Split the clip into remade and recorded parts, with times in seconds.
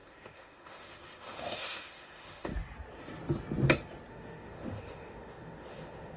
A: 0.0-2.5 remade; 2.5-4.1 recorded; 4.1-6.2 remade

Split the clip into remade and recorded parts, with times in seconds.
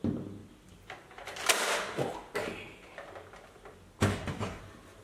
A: 0.0-4.1 recorded; 4.1-4.6 remade; 4.6-5.0 recorded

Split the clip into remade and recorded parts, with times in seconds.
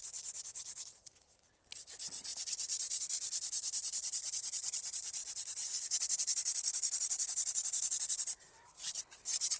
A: 0.0-5.2 remade; 5.2-8.5 recorded; 8.5-9.6 remade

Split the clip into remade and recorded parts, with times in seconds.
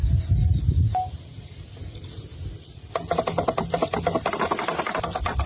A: 0.0-5.5 recorded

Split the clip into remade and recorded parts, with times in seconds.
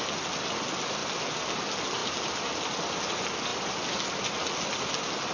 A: 0.0-5.3 recorded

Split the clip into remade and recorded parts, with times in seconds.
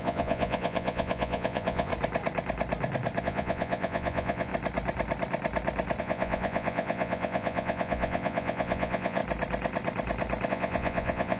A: 0.0-1.9 remade; 1.9-3.2 recorded; 3.2-4.5 remade; 4.5-6.0 recorded; 6.0-9.2 remade; 9.2-10.5 recorded; 10.5-11.4 remade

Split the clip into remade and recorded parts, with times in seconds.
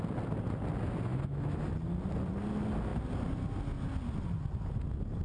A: 0.0-1.1 recorded; 1.1-1.7 remade; 1.7-5.2 recorded